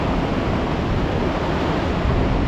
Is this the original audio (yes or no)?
yes